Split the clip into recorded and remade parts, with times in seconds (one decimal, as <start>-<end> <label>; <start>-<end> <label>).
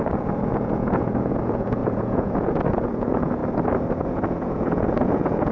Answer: 0.0-3.4 remade; 3.4-4.0 recorded; 4.0-5.5 remade